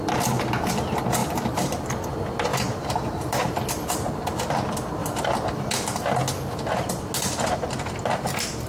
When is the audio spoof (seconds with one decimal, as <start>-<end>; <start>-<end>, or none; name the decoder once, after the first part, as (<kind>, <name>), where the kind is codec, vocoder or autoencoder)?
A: 1.2-1.9 (vocoder, BigVGAN v2); 2.5-3.6